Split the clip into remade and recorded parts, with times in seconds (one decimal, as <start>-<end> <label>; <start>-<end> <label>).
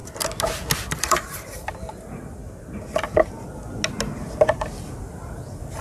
0.0-1.0 recorded; 1.0-2.4 remade; 2.4-5.0 recorded; 5.0-5.8 remade